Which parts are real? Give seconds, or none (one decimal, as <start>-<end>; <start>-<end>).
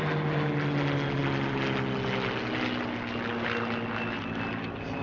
0.0-5.0